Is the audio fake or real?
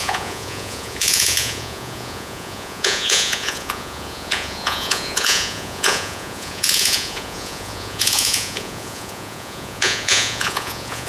fake